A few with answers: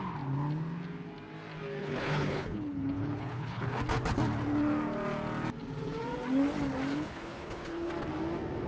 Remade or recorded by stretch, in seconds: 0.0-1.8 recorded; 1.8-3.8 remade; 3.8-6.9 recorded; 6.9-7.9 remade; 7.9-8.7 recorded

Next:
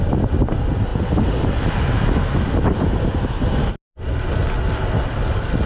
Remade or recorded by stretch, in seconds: 0.0-5.7 recorded

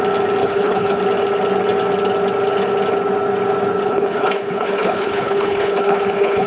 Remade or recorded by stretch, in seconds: 0.0-0.4 recorded; 0.4-1.0 remade; 1.0-3.8 recorded; 3.8-6.5 remade

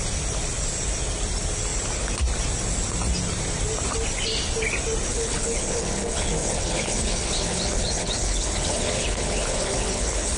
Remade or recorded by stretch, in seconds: 0.0-5.1 recorded; 5.1-10.4 remade